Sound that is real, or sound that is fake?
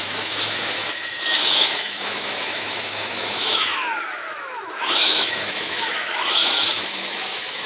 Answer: fake